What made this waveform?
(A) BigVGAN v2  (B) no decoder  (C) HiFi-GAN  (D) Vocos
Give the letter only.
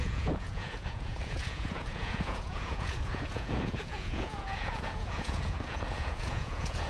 D